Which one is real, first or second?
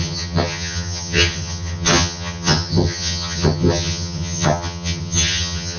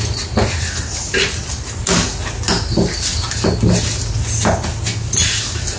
second